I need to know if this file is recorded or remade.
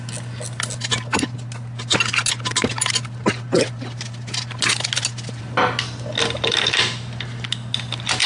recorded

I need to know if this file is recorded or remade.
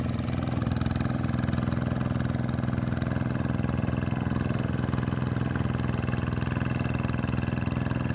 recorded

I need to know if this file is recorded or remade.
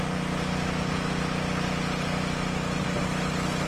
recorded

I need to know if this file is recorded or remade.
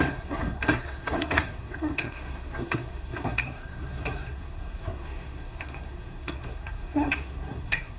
remade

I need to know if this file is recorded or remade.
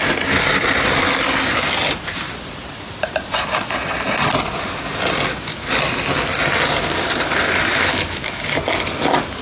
recorded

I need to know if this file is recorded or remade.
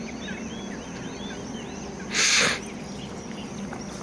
recorded